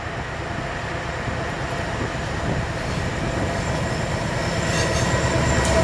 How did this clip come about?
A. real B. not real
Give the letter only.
A